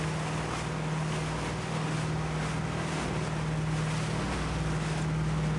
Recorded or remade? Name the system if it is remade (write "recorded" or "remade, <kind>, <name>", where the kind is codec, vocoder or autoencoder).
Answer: recorded